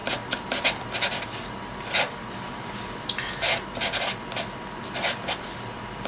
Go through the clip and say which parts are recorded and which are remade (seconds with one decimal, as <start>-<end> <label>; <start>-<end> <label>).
0.0-6.1 recorded